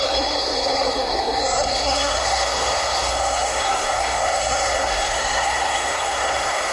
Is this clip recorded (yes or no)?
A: no